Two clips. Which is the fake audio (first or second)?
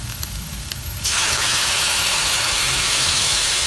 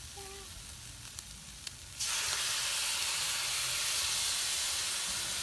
first